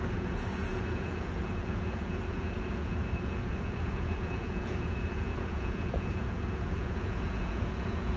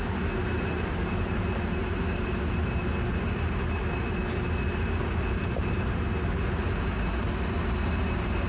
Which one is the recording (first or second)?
second